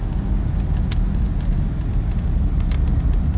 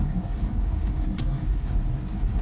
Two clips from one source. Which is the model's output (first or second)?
second